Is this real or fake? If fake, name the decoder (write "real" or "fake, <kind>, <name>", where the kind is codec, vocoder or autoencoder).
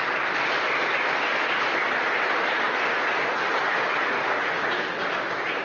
real